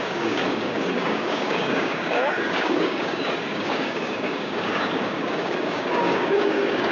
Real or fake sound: fake